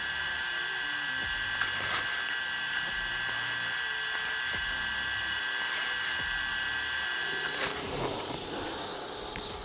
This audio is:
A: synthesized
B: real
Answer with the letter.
B